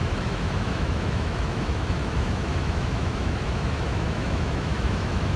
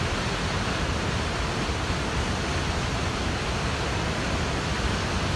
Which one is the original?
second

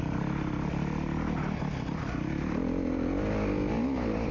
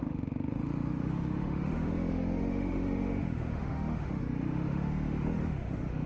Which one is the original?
first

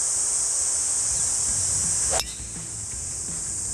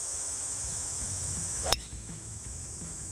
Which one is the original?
first